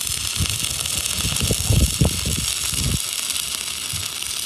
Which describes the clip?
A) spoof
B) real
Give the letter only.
B